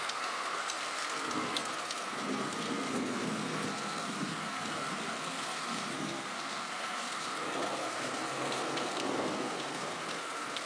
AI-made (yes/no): yes